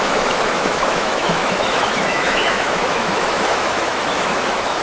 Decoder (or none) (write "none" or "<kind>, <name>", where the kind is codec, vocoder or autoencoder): autoencoder, DAC-VAE